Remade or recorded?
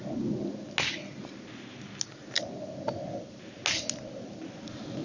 recorded